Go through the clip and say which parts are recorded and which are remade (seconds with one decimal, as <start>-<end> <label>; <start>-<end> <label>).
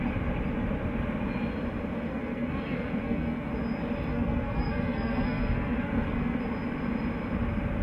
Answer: 0.0-2.1 recorded; 2.1-3.5 remade; 3.5-4.1 recorded; 4.1-6.4 remade; 6.4-7.8 recorded